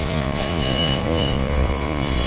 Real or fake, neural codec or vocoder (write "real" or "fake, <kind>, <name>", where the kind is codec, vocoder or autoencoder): fake, vocoder, Vocos